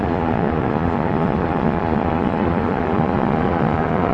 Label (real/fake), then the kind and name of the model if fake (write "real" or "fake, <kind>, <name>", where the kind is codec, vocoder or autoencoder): fake, vocoder, Vocos